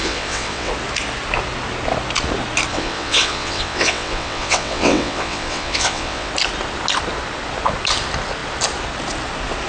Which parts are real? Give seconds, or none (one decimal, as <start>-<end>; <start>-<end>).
0.7-2.7; 6.3-9.7